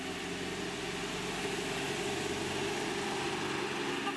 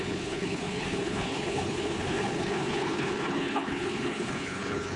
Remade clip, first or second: second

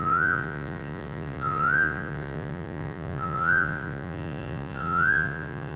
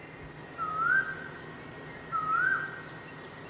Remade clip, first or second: first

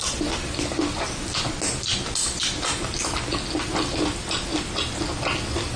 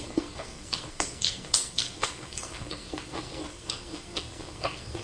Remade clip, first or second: second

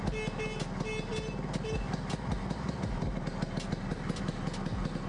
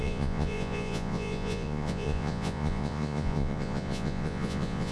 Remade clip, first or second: second